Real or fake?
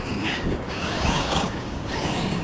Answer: fake